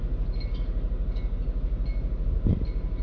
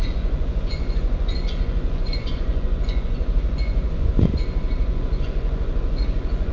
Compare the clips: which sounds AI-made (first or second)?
second